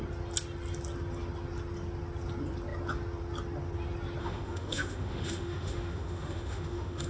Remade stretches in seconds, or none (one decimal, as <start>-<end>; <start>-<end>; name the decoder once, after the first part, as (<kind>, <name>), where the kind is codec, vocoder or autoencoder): 4.2-7.1 (autoencoder, DAC-VAE)